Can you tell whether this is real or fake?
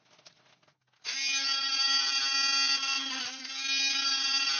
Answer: real